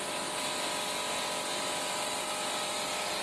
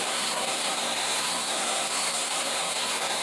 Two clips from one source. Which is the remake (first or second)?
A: second